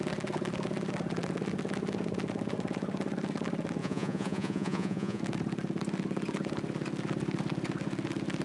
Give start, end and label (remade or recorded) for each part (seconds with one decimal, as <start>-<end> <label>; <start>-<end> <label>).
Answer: 0.0-3.8 recorded; 3.8-5.2 remade; 5.2-8.4 recorded